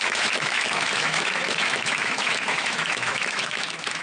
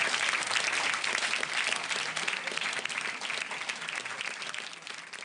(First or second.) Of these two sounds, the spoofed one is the first